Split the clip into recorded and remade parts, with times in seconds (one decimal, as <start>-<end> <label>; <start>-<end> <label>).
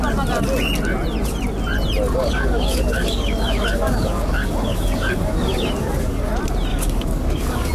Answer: 0.0-2.2 recorded; 2.2-6.3 remade; 6.3-6.7 recorded; 6.7-7.7 remade